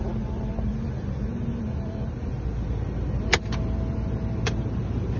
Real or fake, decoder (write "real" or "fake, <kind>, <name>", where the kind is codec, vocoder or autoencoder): real